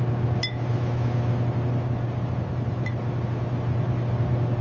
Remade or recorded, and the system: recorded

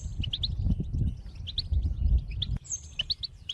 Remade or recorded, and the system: recorded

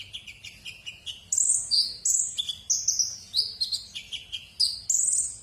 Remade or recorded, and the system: recorded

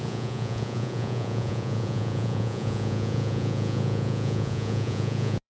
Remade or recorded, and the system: remade, vocoder, Vocos